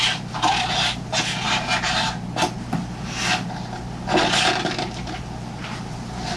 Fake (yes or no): no